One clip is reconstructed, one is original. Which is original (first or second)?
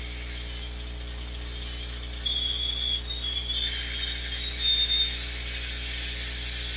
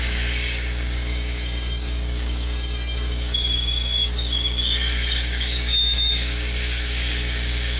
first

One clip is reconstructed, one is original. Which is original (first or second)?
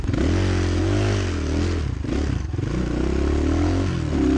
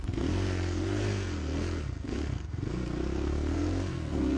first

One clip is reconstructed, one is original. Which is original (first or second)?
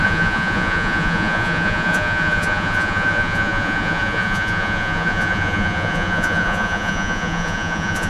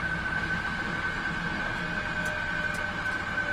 second